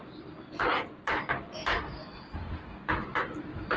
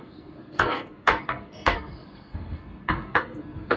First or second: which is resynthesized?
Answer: second